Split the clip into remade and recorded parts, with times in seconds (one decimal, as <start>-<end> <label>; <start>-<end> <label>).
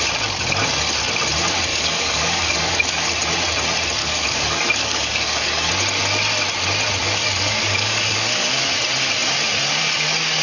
0.0-1.7 recorded; 1.7-3.1 remade; 3.1-4.0 recorded; 4.0-5.7 remade; 5.7-7.0 recorded; 7.0-8.7 remade; 8.7-10.4 recorded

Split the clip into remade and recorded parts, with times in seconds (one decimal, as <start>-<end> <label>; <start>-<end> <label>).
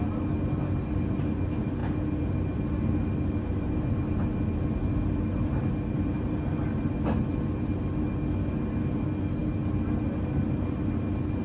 0.0-11.4 recorded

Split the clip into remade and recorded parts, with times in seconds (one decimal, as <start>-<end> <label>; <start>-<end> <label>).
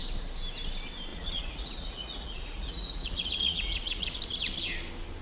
0.0-1.1 recorded; 1.1-4.2 remade; 4.2-5.2 recorded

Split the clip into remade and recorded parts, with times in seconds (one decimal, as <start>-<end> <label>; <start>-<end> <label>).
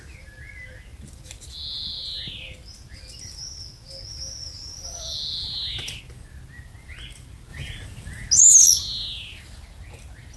0.0-10.4 recorded